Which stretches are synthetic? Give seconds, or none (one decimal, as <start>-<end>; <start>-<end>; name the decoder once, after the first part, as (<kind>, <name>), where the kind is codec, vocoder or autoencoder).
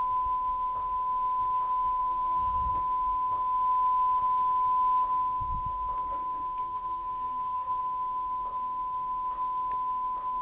2.0-2.7 (codec, SNAC); 6.6-7.8